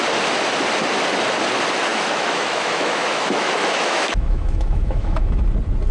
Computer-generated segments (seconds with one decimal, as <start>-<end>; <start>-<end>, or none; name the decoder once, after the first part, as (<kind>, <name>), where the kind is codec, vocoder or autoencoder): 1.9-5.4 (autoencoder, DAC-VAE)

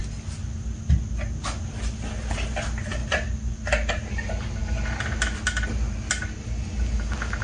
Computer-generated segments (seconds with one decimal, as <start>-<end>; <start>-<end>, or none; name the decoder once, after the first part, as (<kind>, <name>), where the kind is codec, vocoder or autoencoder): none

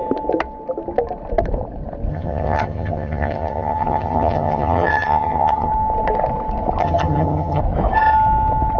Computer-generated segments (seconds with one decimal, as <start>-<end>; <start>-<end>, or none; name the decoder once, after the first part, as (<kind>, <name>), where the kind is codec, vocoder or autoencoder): 2.1-5.7 (vocoder, HiFi-GAN); 6.8-7.6

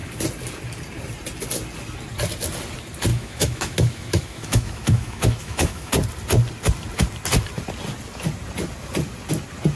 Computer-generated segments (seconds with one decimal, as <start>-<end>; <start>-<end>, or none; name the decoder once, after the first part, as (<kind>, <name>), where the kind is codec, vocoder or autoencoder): 3.1-5.9 (autoencoder, DAC-VAE)

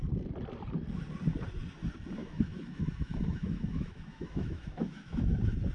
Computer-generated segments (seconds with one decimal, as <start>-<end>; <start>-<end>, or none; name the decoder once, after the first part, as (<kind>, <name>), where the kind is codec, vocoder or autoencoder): 2.2-5.2 (autoencoder, DAC-VAE)